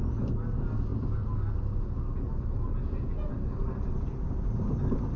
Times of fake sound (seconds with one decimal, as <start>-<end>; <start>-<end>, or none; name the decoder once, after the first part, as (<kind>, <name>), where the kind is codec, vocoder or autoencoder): 4.1-4.8 (vocoder, BigVGAN v2)